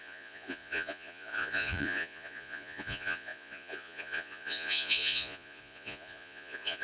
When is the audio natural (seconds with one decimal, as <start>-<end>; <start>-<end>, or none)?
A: none